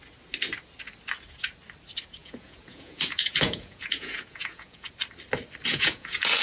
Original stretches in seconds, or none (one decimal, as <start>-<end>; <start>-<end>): 0.0-2.2; 4.9-5.7